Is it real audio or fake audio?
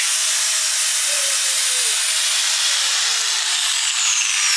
real